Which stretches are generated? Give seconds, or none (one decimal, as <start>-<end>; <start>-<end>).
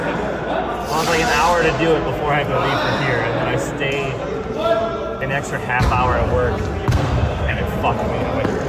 6.9-7.6